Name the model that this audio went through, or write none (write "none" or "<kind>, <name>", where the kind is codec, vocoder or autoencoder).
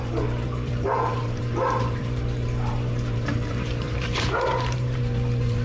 vocoder, BigVGAN v2